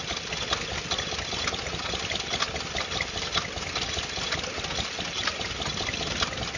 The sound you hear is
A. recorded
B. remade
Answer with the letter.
A